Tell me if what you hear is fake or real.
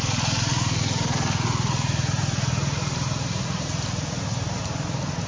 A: real